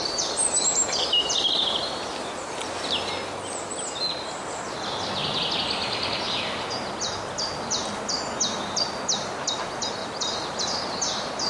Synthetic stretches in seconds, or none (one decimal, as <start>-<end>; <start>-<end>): 10.0-10.8